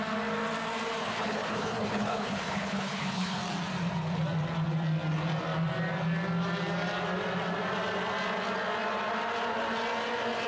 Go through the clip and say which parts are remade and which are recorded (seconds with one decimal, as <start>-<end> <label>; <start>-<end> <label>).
0.0-1.0 recorded; 1.0-3.4 remade; 3.4-10.5 recorded